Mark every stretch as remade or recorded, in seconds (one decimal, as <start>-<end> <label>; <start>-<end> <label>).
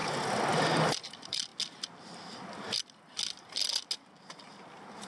0.0-0.8 recorded; 0.8-1.5 remade; 1.5-4.5 recorded; 4.5-5.1 remade